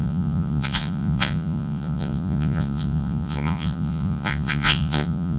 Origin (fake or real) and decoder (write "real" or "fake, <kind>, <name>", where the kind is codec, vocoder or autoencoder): fake, vocoder, Vocos